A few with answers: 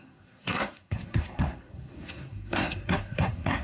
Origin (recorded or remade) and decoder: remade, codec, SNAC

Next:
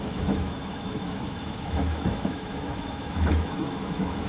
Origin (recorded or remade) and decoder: remade, autoencoder, DAC-VAE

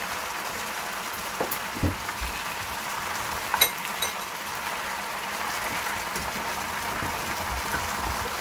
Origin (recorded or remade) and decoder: recorded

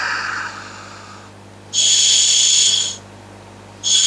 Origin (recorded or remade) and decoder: recorded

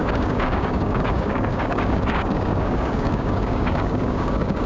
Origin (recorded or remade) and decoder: remade, codec, DAC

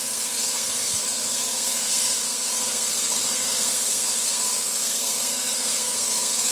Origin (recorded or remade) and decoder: remade, codec, SNAC